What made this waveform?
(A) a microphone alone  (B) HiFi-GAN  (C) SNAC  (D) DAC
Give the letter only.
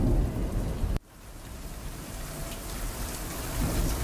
A